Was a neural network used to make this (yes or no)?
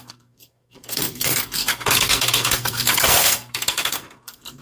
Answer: yes